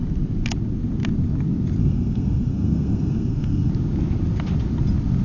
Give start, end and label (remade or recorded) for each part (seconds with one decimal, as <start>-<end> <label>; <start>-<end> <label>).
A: 0.0-1.8 recorded; 1.8-3.7 remade; 3.7-5.2 recorded